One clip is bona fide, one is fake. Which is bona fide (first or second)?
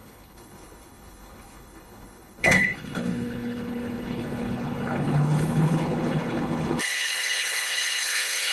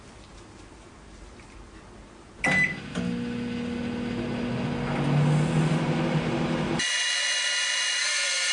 second